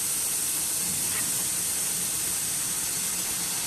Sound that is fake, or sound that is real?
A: real